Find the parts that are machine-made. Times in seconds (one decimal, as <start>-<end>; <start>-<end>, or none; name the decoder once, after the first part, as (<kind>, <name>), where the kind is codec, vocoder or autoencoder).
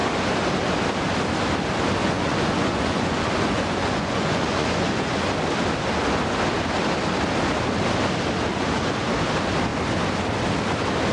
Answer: 2.0-5.2 (vocoder, Vocos); 8.5-9.1